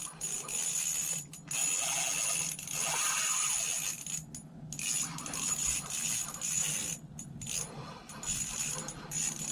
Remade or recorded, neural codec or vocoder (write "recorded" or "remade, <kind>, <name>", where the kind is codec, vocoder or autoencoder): recorded